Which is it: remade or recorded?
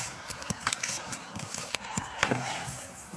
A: remade